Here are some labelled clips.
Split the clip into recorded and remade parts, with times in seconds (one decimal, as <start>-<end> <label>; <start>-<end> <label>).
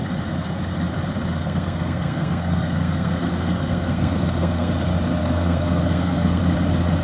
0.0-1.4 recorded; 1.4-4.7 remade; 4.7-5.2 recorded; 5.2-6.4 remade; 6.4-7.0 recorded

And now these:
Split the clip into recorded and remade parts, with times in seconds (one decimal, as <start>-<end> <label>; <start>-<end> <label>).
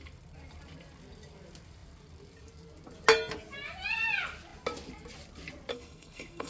0.0-5.7 recorded; 5.7-6.5 remade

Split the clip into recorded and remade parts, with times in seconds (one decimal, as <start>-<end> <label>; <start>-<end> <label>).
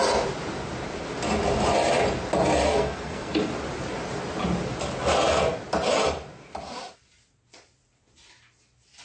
0.0-2.7 recorded; 2.7-3.5 remade; 3.5-9.0 recorded